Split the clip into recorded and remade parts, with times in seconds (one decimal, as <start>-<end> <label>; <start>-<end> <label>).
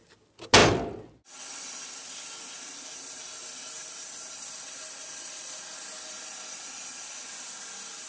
0.0-8.1 recorded